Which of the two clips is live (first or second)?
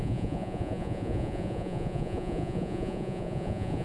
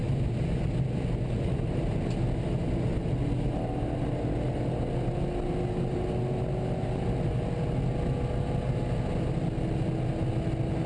second